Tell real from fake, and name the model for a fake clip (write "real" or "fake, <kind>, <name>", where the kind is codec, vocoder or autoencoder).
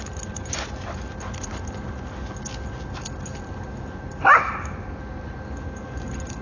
real